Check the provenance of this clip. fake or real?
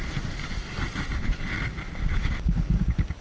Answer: real